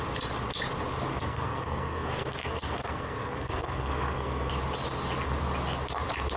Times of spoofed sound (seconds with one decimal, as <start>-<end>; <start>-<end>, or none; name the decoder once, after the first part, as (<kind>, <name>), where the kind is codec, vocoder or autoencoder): 1.1-4.5 (codec, SNAC)